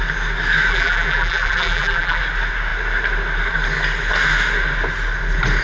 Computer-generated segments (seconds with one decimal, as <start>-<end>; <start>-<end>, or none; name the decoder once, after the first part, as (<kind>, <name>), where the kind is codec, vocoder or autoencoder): 0.7-2.2 (vocoder, BigVGAN v2)